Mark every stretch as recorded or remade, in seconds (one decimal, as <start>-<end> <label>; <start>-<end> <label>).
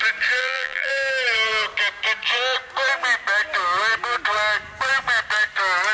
0.0-0.4 recorded; 0.4-0.9 remade; 0.9-5.9 recorded